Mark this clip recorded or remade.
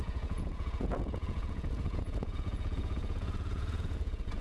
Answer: remade